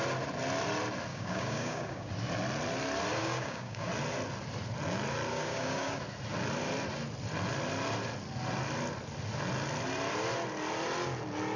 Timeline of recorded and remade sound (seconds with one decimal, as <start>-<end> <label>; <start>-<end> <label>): 0.0-1.1 recorded; 1.1-2.1 remade; 2.1-3.2 recorded; 3.2-3.9 remade; 3.9-5.3 recorded; 5.3-6.0 remade; 6.0-11.6 recorded